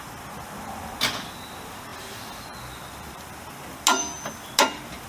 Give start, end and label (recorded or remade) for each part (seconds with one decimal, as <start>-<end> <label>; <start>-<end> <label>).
0.0-5.1 recorded